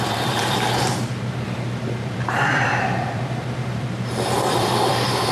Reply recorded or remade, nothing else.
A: remade